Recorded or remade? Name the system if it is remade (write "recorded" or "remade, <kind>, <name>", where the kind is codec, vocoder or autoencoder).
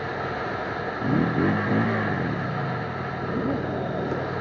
recorded